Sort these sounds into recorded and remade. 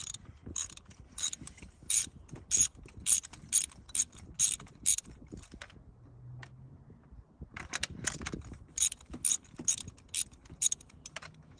recorded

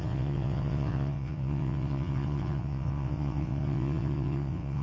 remade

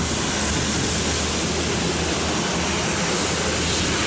recorded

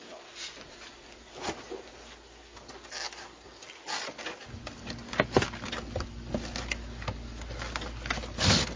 recorded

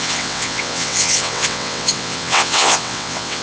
remade